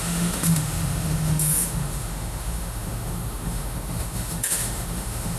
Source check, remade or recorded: remade